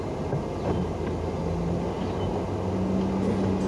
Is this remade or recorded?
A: recorded